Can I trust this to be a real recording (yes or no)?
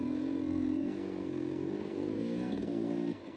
no